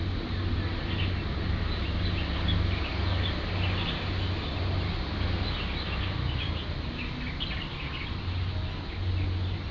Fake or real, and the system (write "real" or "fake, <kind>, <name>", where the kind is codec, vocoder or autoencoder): real